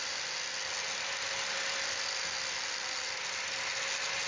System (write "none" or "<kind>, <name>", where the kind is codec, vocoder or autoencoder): none